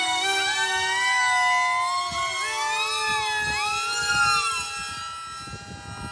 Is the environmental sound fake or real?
real